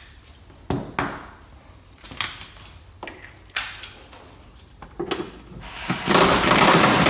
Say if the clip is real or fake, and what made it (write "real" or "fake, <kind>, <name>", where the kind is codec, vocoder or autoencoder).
real